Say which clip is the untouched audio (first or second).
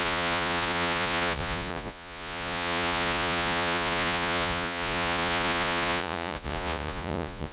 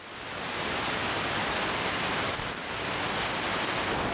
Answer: second